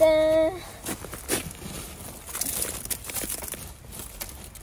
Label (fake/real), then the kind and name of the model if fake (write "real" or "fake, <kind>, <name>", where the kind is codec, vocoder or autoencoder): real